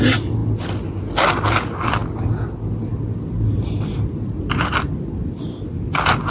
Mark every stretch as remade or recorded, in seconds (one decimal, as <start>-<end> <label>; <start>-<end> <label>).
0.0-3.5 recorded; 3.5-4.5 remade; 4.5-6.3 recorded